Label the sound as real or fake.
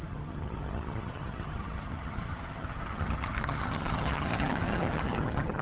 fake